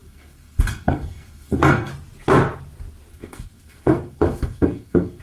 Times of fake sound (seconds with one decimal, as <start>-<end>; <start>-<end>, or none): 0.0-1.9; 3.1-5.2